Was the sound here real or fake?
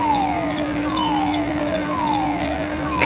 fake